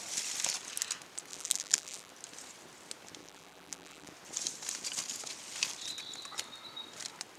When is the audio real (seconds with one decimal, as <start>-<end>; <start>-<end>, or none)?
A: 0.0-1.3; 2.1-3.2; 4.1-7.4